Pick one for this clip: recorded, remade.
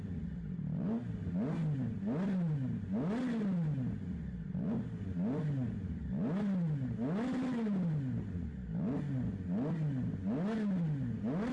recorded